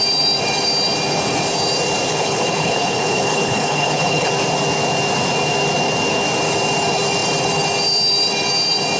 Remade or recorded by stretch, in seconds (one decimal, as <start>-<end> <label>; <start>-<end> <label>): 0.0-2.1 recorded; 2.1-4.3 remade; 4.3-9.0 recorded